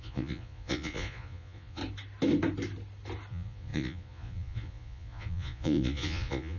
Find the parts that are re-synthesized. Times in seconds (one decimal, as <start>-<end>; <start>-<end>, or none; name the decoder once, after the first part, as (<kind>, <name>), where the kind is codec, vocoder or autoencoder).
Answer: 0.0-1.8 (vocoder, Vocos); 3.3-6.6